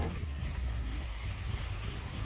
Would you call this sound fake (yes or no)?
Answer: yes